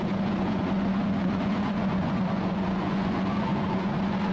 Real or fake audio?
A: fake